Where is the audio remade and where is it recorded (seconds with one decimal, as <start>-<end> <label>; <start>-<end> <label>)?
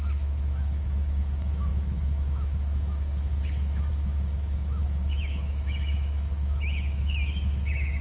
0.0-8.0 remade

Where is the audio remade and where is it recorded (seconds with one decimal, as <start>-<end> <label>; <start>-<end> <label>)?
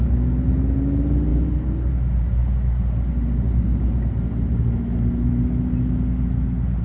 0.0-6.8 recorded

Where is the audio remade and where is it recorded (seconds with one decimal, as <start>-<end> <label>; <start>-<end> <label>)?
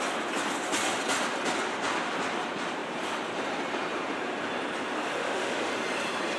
0.0-5.2 recorded; 5.2-5.7 remade; 5.7-6.4 recorded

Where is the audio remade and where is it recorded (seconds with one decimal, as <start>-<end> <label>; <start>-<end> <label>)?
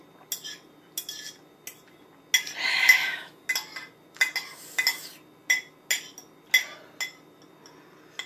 0.0-2.7 recorded; 2.7-3.5 remade; 3.5-8.3 recorded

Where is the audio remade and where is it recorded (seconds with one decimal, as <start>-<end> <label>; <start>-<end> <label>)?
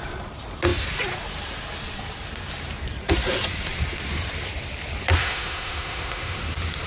0.0-5.2 recorded; 5.2-6.4 remade; 6.4-6.9 recorded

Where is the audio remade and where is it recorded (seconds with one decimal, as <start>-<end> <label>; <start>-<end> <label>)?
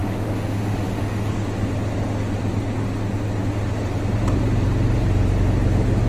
0.0-1.3 remade; 1.3-6.1 recorded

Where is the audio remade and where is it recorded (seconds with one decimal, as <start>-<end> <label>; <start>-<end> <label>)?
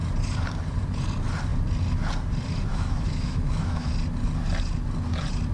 0.0-2.7 recorded; 2.7-3.9 remade; 3.9-5.5 recorded